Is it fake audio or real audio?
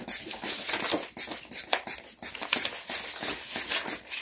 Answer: real